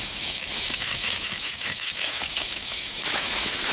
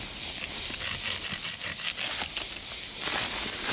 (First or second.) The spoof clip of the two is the first